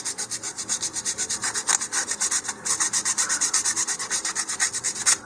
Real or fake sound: real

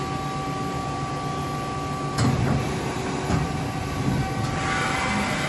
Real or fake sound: real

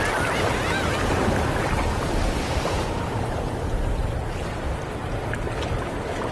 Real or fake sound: real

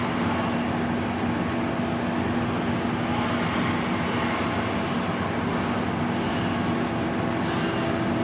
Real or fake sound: real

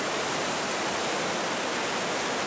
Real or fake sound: real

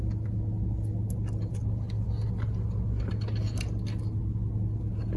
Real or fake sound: real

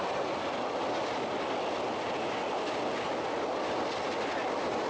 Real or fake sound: real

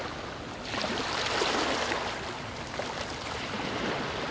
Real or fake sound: real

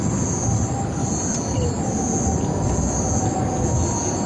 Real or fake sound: real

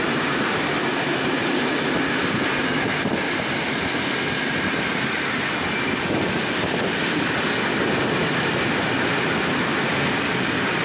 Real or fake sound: real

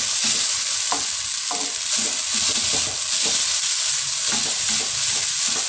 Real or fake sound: real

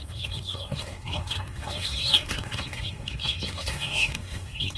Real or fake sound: fake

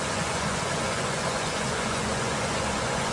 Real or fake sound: fake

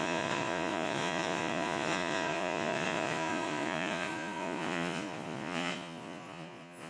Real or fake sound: fake